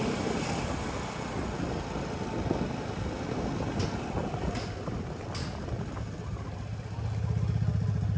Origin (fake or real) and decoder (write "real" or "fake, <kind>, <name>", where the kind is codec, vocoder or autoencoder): real